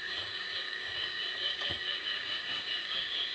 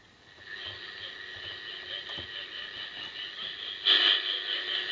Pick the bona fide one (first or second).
second